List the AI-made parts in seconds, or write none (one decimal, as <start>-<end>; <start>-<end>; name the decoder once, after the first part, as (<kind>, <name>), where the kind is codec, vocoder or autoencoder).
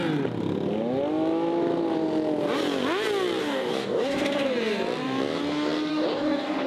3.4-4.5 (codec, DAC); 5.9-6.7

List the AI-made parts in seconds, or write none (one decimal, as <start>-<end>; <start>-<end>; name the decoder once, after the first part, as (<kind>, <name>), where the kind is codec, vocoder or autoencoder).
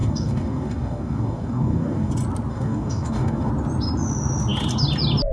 0.0-2.1 (codec, DAC); 2.5-3.5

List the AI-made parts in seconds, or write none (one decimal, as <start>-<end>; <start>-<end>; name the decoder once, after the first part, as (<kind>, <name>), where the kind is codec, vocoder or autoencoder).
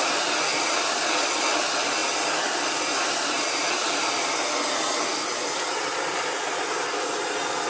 none